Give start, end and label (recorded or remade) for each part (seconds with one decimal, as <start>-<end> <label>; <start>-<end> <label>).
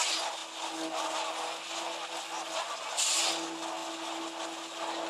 0.0-5.1 recorded